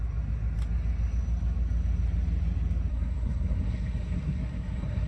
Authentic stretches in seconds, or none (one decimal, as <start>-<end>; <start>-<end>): 0.0-2.9